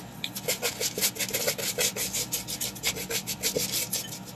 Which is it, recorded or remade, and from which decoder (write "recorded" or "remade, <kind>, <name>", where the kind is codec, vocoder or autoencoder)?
recorded